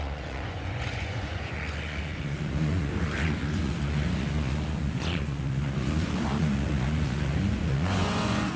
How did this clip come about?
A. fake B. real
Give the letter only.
A